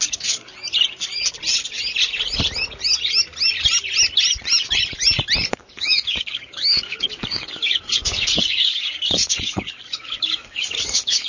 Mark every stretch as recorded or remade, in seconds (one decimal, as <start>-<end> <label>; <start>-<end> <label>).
0.0-0.5 remade; 0.5-5.5 recorded; 5.5-11.3 remade